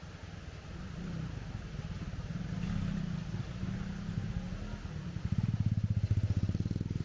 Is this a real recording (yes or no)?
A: yes